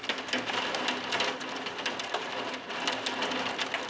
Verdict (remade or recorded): recorded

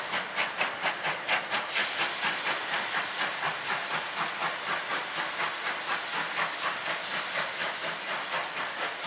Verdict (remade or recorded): recorded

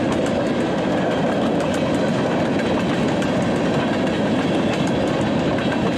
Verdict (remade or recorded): recorded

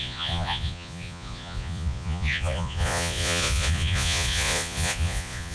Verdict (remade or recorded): remade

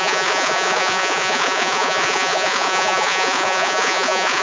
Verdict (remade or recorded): remade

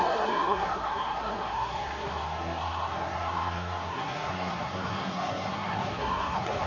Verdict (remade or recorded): remade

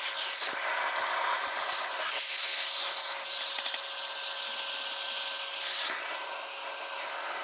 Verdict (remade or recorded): recorded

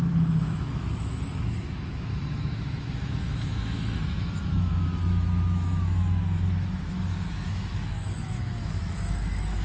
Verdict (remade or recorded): remade